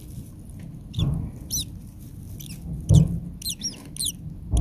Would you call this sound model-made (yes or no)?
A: no